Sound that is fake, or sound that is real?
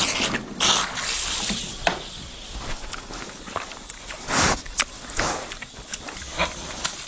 real